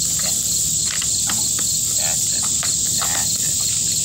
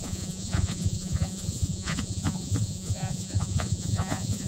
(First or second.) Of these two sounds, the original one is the first